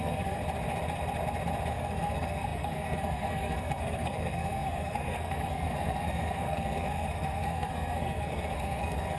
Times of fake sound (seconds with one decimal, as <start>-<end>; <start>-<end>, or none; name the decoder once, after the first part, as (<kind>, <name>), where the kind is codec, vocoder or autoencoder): 0.0-0.4 (codec, SNAC); 1.7-9.2